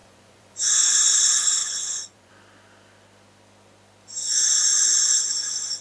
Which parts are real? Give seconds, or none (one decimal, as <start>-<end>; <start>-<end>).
0.8-1.6; 2.3-4.7; 5.2-5.8